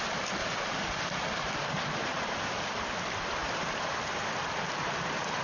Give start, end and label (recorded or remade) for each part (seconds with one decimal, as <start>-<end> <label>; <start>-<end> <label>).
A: 0.0-0.4 recorded; 0.4-2.5 remade; 2.5-5.4 recorded